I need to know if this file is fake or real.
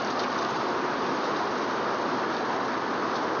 real